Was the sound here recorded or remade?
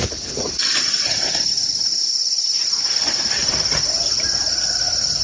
recorded